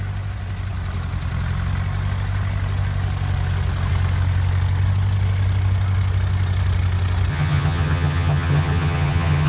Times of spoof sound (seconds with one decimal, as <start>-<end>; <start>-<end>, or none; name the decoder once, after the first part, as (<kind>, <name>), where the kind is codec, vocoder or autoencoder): 7.3-9.5 (vocoder, HiFi-GAN)